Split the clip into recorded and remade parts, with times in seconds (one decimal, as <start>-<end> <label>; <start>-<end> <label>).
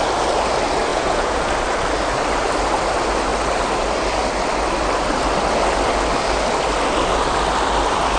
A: 0.0-0.9 recorded; 0.9-1.5 remade; 1.5-8.2 recorded